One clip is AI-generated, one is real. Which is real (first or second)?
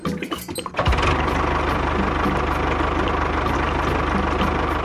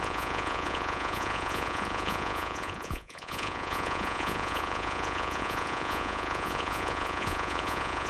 first